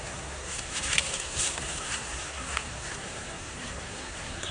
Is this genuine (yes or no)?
no